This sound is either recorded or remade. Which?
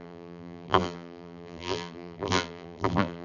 remade